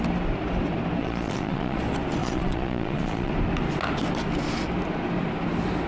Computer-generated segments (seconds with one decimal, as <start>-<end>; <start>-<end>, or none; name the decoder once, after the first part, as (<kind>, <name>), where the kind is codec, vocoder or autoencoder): 1.0-1.8 (vocoder, Vocos); 2.2-3.3